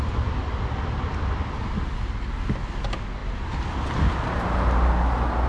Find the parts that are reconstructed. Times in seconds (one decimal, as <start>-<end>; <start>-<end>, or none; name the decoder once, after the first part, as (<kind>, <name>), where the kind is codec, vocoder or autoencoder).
none